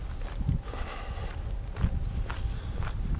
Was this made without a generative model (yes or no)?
yes